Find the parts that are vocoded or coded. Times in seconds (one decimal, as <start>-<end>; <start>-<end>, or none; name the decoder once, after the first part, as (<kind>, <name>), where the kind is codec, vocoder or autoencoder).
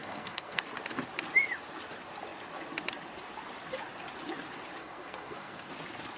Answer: 0.0-0.6 (codec, SNAC); 4.8-5.7